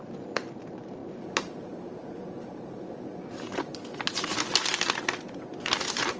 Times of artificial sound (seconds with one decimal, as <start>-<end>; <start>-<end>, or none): 0.0-3.7; 5.7-6.2